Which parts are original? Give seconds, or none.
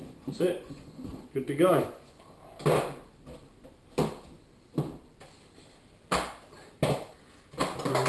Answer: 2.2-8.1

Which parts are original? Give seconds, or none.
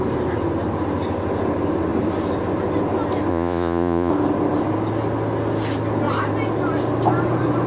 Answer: 0.0-3.3; 4.1-7.7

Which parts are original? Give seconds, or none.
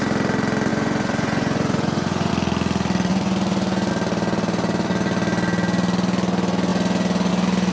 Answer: 0.0-0.7; 2.3-3.1; 3.9-7.7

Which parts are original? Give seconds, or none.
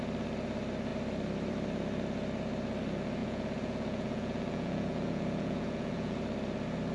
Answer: 0.0-3.2; 6.2-6.9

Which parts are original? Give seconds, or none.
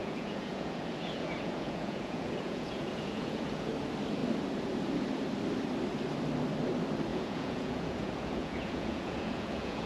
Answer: 3.7-7.1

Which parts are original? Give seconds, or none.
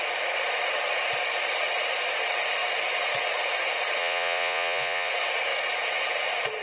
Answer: 0.0-4.0; 5.1-6.6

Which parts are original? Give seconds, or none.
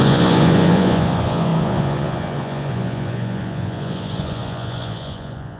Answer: none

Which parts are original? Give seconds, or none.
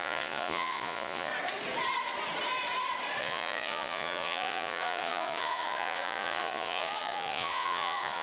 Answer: 1.3-3.2